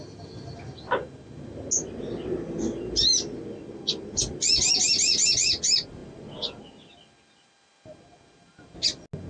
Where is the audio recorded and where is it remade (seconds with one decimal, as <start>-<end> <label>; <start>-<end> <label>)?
0.0-9.3 recorded